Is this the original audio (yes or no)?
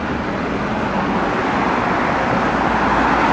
yes